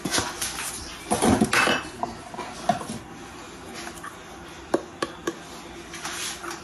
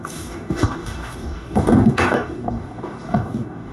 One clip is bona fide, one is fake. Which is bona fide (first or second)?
first